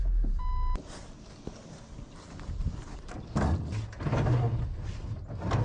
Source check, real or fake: real